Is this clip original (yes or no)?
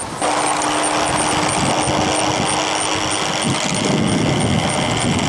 yes